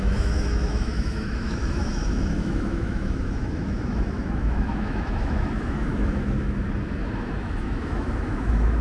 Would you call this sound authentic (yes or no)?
no